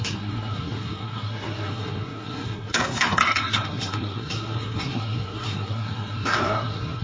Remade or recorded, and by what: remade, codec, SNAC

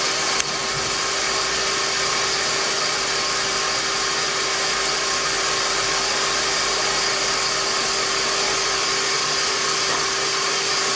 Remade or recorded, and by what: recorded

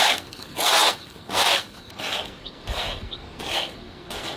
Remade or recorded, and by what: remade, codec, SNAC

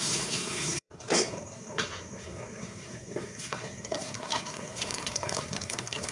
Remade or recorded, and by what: remade, codec, SNAC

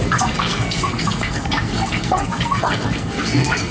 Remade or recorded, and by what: remade, codec, SNAC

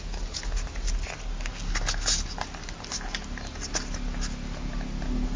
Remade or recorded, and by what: recorded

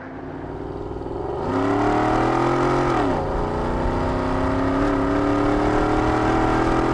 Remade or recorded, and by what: recorded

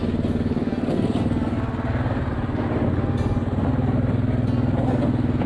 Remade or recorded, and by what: recorded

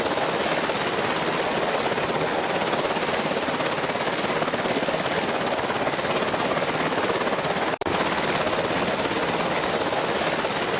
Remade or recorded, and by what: recorded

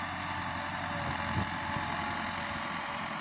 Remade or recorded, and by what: recorded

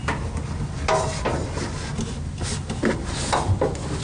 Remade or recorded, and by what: recorded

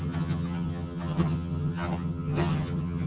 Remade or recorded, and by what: remade, vocoder, HiFi-GAN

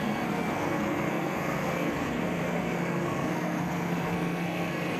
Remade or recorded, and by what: remade, codec, SNAC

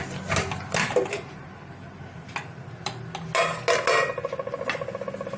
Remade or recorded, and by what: recorded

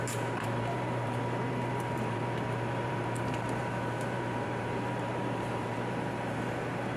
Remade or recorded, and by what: remade, vocoder, BigVGAN v2